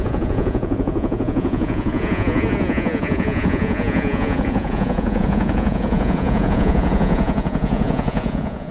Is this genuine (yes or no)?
no